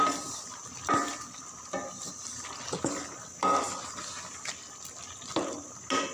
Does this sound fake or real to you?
real